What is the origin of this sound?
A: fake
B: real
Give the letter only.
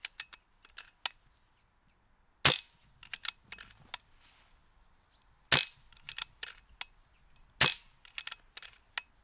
B